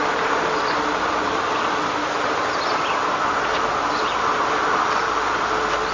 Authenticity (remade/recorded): recorded